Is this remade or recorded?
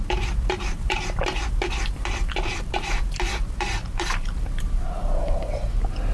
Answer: remade